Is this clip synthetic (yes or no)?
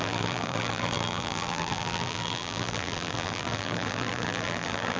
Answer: yes